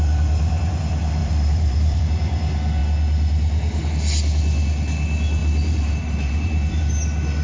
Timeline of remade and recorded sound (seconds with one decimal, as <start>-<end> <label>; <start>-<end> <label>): 0.0-1.2 recorded; 1.2-2.0 remade; 2.0-5.4 recorded; 5.4-6.8 remade; 6.8-7.4 recorded